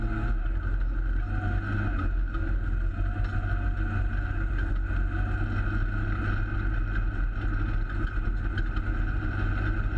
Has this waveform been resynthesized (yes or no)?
no